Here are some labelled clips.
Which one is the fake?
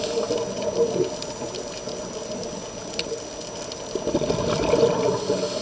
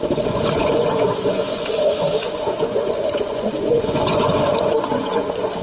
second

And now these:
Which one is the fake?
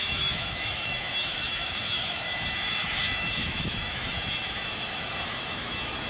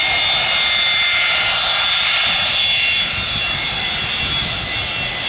first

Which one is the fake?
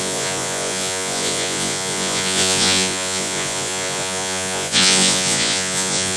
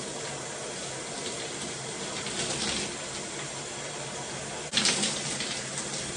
first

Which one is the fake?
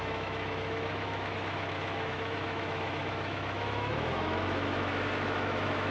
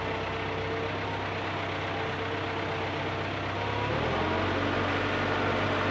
first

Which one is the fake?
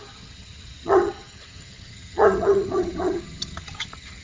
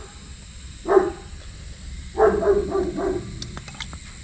first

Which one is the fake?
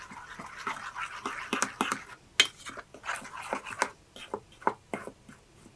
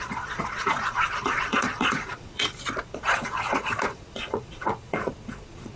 second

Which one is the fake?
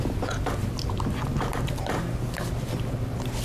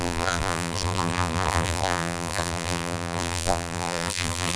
second